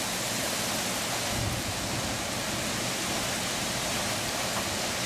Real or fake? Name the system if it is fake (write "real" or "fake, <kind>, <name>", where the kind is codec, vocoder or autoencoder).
real